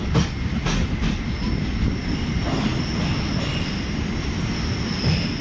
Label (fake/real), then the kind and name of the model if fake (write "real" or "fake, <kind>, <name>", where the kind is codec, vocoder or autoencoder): real